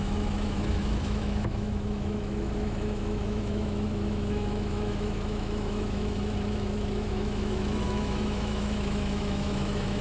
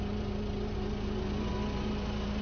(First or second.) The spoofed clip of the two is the first